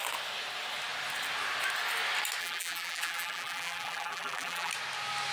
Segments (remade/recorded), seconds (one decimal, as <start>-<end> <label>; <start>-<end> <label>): 0.0-2.4 recorded; 2.4-4.7 remade; 4.7-5.3 recorded